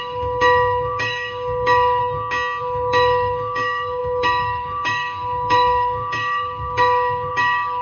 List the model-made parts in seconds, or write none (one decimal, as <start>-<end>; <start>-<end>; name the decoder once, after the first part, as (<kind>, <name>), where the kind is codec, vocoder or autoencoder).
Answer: 0.0-2.0 (codec, DAC); 2.6-7.8